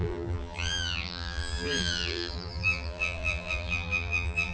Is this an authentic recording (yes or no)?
no